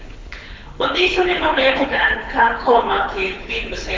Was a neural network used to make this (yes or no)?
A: yes